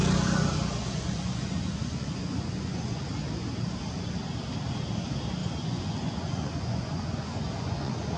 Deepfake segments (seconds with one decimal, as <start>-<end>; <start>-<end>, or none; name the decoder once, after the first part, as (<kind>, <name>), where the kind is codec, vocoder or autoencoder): 0.8-3.0 (vocoder, Vocos); 5.4-8.2